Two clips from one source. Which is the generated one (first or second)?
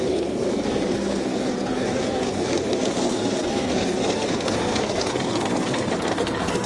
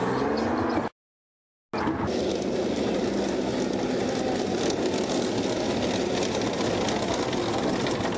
first